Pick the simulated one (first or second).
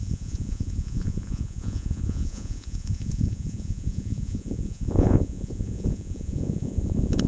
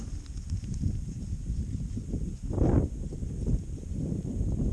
first